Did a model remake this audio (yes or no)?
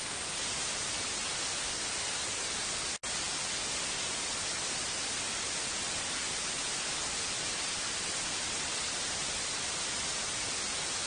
no